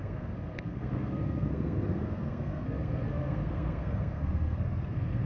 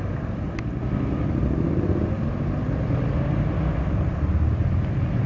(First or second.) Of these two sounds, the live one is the second